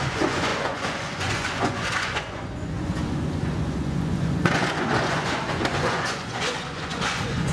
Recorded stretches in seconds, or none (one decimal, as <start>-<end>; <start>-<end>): none

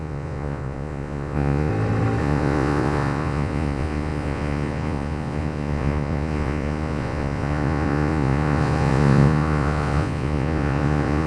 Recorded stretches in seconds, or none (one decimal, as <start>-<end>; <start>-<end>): 1.7-2.2

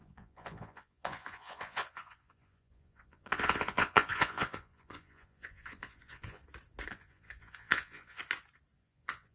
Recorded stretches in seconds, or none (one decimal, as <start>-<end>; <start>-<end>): 6.4-6.9; 8.2-8.8

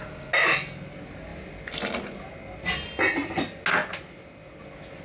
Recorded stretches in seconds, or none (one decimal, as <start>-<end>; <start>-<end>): 0.0-5.0

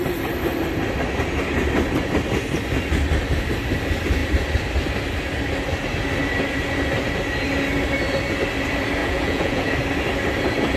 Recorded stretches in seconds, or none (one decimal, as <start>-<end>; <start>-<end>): 0.0-9.0; 9.7-10.8